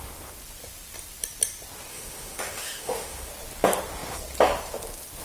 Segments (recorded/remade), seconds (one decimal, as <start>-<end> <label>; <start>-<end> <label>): 0.0-1.9 recorded; 1.9-3.3 remade; 3.3-5.2 recorded